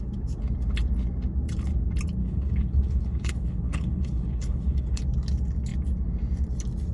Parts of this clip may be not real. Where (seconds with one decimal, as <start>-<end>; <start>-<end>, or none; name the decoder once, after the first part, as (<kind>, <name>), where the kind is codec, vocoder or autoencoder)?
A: 2.2-5.0 (codec, HILCodec)